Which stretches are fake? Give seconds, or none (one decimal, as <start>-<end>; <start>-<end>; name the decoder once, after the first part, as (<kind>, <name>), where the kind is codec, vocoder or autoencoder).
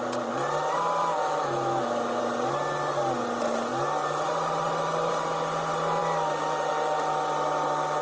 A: 1.1-2.2 (autoencoder, DAC-VAE)